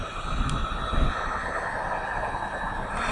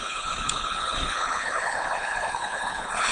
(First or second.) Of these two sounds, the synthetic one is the second